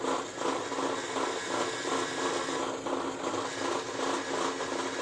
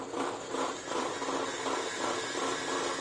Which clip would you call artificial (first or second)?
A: second